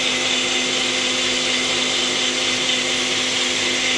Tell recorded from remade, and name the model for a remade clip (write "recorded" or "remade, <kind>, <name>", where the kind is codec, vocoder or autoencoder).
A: recorded